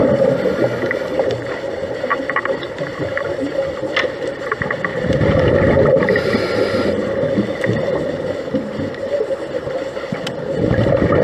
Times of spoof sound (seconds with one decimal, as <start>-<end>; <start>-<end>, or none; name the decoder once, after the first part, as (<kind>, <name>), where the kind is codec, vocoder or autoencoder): 2.9-3.5 (vocoder, BigVGAN v2); 4.9-5.8